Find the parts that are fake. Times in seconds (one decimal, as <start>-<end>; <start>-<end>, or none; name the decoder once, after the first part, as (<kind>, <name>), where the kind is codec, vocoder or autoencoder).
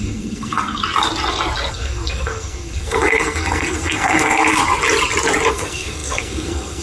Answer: 0.0-0.8 (codec, SNAC); 1.7-4.6; 5.5-6.8